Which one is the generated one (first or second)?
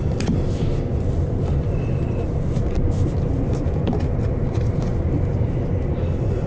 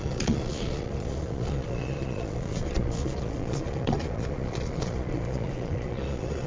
second